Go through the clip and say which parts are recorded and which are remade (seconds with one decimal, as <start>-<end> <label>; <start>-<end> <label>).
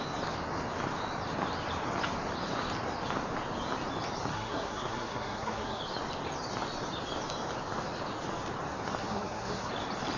0.0-4.3 recorded; 4.3-5.8 remade; 5.8-9.0 recorded; 9.0-9.7 remade; 9.7-10.2 recorded